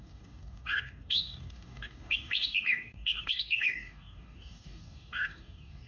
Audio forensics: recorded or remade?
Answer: remade